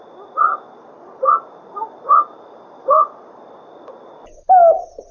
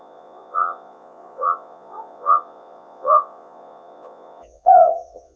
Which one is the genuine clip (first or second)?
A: first